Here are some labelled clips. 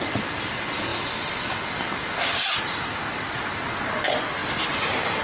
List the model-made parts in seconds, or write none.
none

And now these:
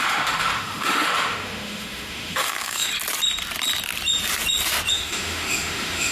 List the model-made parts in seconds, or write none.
0.0-2.9 (autoencoder, DAC-VAE); 4.9-6.1

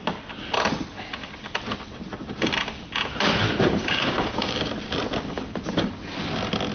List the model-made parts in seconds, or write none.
3.8-4.7 (codec, DAC)

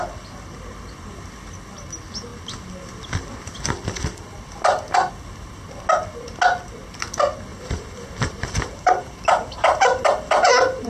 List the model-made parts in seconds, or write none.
7.5-10.5 (vocoder, BigVGAN v2)

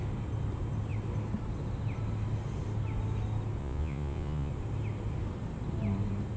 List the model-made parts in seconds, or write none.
3.6-4.5 (vocoder, Vocos)